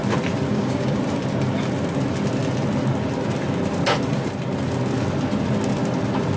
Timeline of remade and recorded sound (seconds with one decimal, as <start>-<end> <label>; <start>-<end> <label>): 0.0-0.5 recorded; 0.5-1.0 remade; 1.0-6.4 recorded